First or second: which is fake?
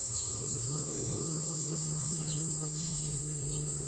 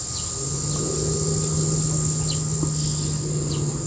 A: first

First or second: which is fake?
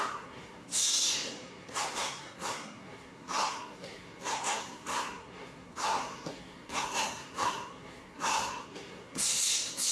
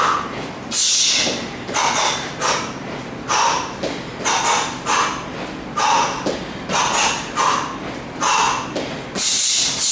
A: first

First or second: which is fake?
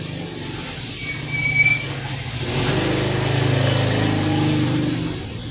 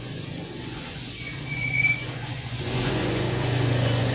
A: second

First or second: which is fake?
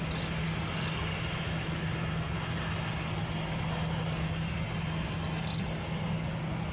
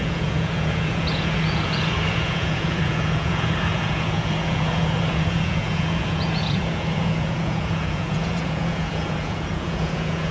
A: second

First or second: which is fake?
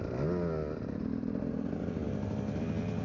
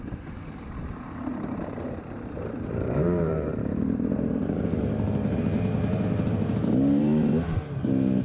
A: second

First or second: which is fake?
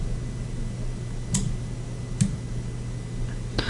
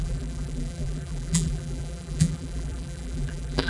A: second